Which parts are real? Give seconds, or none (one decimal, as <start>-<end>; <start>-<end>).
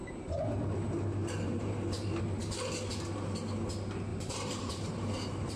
0.6-1.2; 2.2-4.1